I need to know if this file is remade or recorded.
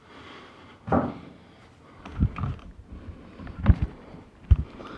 remade